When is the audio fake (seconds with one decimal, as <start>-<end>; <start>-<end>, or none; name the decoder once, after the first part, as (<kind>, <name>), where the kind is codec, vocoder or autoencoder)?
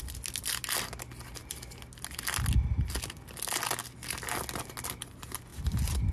none